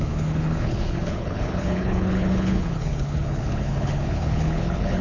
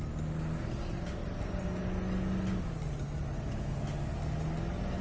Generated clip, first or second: first